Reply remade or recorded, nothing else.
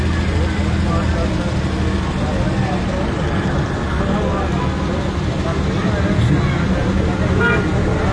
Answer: recorded